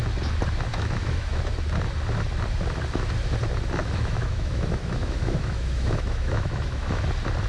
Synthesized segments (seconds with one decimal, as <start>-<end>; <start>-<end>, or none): 0.7-1.4; 3.8-7.0